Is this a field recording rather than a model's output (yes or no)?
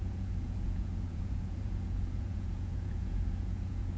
no